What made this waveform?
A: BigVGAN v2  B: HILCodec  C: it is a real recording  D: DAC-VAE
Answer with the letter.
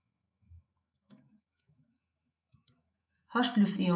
D